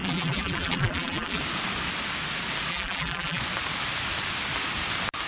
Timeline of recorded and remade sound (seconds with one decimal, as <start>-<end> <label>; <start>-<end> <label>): 0.0-1.4 remade; 1.4-2.7 recorded; 2.7-3.4 remade; 3.4-5.3 recorded